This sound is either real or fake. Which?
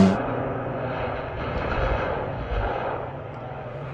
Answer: fake